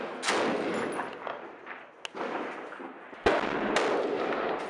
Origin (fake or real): real